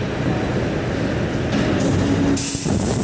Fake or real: real